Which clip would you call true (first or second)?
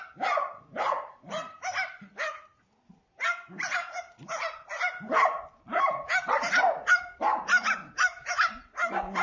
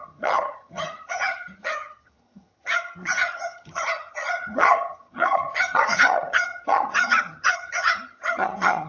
first